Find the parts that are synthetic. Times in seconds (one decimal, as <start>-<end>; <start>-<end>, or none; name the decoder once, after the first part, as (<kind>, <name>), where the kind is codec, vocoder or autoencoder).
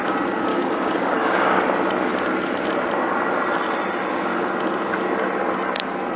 0.5-1.6 (codec, DAC)